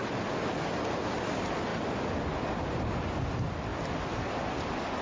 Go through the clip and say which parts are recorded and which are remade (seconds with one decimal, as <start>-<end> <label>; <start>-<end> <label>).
0.0-5.0 recorded